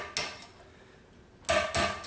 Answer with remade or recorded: recorded